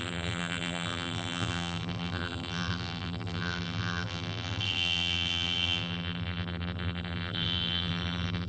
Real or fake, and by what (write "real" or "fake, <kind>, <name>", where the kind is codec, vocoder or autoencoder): fake, vocoder, BigVGAN v2